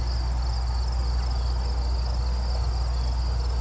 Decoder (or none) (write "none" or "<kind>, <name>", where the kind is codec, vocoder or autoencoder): none